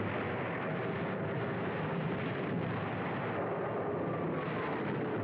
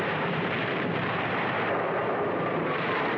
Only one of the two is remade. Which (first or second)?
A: second